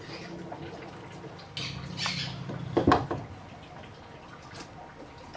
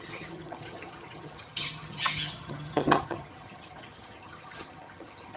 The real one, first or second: first